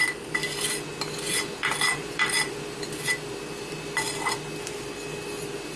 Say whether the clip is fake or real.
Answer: fake